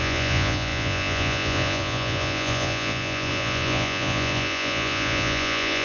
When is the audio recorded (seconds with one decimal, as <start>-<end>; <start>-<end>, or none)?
none